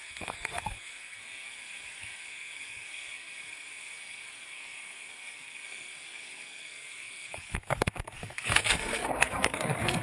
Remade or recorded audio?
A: remade